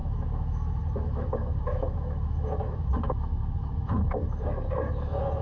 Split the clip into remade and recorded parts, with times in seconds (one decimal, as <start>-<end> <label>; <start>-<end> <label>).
0.0-5.4 remade